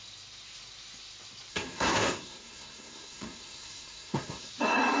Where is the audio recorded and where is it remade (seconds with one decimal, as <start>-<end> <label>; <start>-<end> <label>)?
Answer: 0.0-1.5 recorded; 1.5-4.5 remade; 4.5-5.0 recorded